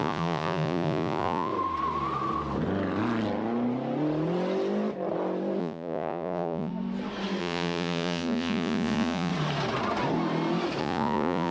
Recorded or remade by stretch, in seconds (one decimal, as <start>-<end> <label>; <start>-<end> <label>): 0.0-1.5 remade; 1.5-5.6 recorded; 5.6-6.7 remade; 6.7-7.4 recorded; 7.4-9.3 remade; 9.3-10.8 recorded; 10.8-11.5 remade